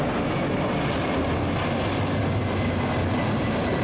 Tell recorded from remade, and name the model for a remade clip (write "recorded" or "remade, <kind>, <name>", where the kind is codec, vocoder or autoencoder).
recorded